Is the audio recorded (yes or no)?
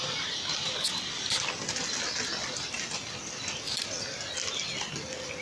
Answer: yes